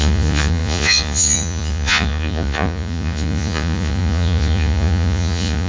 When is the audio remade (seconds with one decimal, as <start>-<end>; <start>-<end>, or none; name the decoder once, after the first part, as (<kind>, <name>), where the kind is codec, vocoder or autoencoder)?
0.0-5.7 (vocoder, Vocos)